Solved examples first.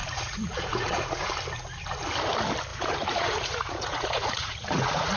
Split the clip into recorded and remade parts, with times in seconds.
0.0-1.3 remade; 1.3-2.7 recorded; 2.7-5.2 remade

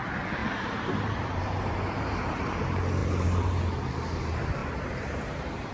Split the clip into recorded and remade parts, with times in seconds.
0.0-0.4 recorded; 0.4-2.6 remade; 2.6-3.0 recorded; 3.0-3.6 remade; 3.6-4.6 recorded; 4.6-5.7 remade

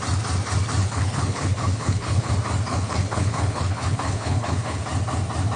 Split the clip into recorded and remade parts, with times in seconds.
0.0-0.8 recorded; 0.8-2.3 remade; 2.3-2.7 recorded; 2.7-4.8 remade; 4.8-5.6 recorded

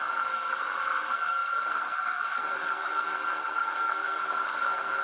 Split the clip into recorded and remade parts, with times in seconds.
0.0-5.0 remade